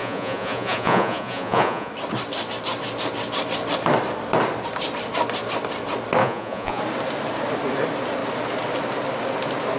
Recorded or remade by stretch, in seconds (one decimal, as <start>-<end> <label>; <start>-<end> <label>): 0.0-1.9 remade; 1.9-6.2 recorded; 6.2-6.8 remade; 6.8-9.8 recorded